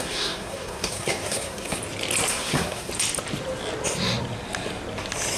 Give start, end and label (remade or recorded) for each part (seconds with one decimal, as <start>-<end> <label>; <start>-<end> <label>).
0.0-1.8 remade; 1.8-2.3 recorded; 2.3-2.9 remade; 2.9-5.4 recorded